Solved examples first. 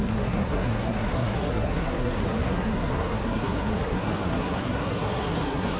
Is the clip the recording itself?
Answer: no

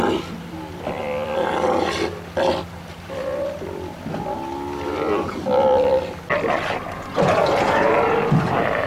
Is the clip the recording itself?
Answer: yes